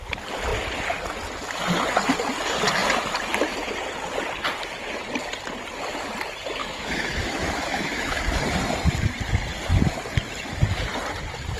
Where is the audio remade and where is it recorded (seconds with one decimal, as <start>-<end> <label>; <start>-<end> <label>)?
0.0-6.6 recorded; 6.6-8.2 remade; 8.2-11.6 recorded